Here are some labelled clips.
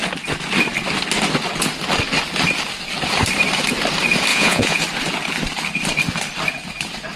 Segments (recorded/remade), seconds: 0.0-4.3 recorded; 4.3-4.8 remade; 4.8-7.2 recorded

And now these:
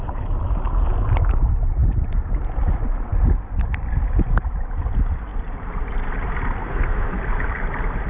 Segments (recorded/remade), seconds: 0.0-6.6 recorded; 6.6-7.2 remade; 7.2-8.1 recorded

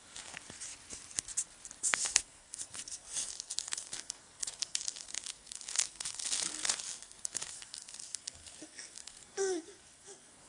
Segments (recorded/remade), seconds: 0.0-0.4 remade; 0.4-1.8 recorded; 1.8-10.5 remade

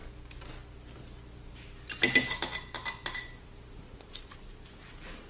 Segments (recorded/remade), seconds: 0.0-5.3 recorded

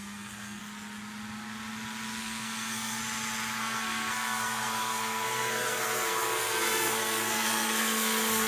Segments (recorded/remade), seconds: 0.0-0.6 remade; 0.6-2.2 recorded; 2.2-3.0 remade; 3.0-3.6 recorded; 3.6-8.5 remade